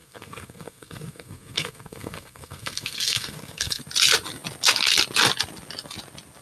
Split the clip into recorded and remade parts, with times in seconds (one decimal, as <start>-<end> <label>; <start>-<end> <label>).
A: 0.0-3.8 remade; 3.8-6.4 recorded